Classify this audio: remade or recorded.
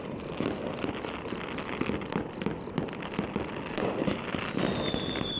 recorded